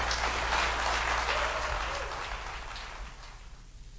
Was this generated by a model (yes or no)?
no